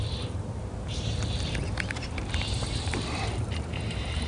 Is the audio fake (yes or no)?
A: yes